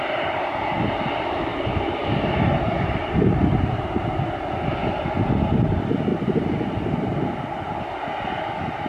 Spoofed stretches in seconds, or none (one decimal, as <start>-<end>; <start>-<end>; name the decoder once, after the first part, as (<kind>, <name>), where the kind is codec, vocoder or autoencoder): 1.5-4.2 (vocoder, BigVGAN v2); 6.1-7.8

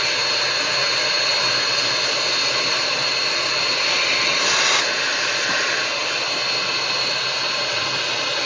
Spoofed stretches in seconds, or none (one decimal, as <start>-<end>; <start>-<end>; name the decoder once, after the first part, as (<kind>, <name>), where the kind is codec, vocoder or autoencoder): 1.3-3.5 (vocoder, BigVGAN v2); 4.3-4.8; 6.0-7.2

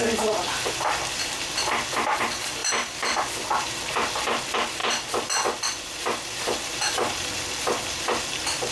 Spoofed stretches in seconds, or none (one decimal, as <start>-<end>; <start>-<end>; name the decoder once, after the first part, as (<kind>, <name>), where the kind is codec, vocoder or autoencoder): 2.6-3.7 (vocoder, BigVGAN v2)

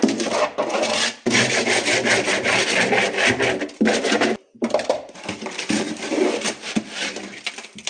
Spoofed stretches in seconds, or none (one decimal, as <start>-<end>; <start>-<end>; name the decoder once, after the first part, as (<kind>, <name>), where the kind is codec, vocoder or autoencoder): 4.9-6.8 (vocoder, BigVGAN v2)

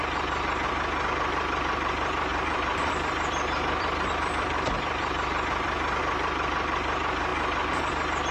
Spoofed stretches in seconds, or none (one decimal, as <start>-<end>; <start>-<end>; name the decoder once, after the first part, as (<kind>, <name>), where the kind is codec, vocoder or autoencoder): 2.3-6.0 (vocoder, BigVGAN v2)

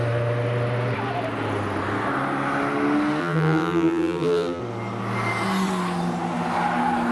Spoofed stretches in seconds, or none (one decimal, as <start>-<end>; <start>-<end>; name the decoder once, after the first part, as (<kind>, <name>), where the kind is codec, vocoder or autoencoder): 3.2-4.6 (vocoder, BigVGAN v2)